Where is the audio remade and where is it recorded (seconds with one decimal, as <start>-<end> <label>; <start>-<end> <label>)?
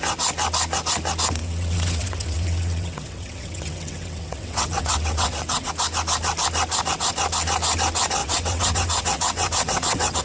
0.0-1.4 recorded; 1.4-5.7 remade; 5.7-8.2 recorded; 8.2-10.2 remade